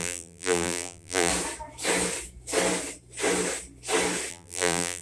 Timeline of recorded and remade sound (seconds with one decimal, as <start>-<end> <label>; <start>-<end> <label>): 0.0-1.3 remade; 1.3-4.3 recorded; 4.3-5.0 remade